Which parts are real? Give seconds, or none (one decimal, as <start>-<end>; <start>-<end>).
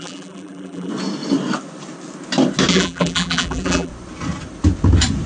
0.9-2.7; 3.9-5.3